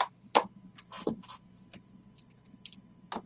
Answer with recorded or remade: recorded